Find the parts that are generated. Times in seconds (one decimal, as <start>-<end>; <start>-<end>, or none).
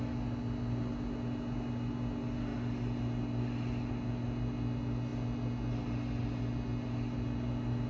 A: none